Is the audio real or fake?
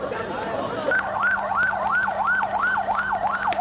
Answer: real